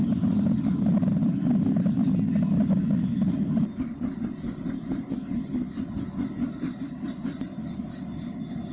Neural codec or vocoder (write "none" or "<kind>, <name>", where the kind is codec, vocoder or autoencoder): none